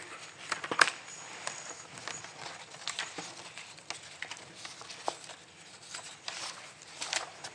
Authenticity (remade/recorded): recorded